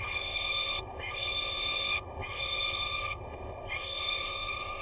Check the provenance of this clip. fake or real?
fake